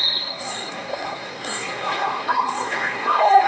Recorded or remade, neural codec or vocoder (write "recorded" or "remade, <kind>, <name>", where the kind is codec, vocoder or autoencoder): remade, codec, SNAC